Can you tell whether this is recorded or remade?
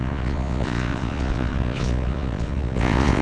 remade